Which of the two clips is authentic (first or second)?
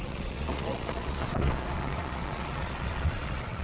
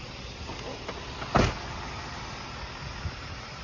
second